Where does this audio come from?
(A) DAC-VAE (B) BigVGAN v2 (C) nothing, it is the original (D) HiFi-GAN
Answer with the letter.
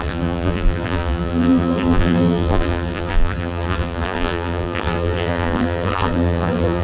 B